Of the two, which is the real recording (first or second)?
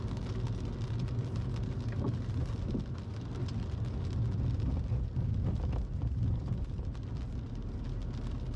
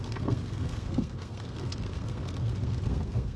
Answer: first